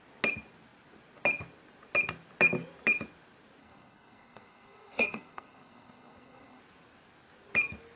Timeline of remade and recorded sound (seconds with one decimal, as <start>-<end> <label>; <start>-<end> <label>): 0.0-3.6 recorded; 3.6-6.6 remade; 6.6-8.0 recorded